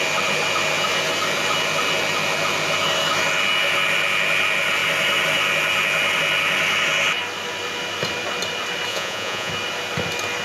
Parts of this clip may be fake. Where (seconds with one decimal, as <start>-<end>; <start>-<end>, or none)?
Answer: 8.9-9.5